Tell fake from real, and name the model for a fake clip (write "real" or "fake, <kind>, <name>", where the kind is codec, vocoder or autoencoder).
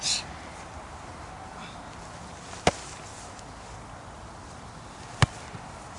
real